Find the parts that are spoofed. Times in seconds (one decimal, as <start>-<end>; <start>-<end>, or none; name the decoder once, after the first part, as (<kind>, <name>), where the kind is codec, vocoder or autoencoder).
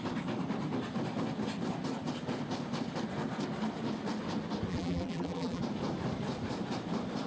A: 4.7-5.6 (vocoder, BigVGAN v2)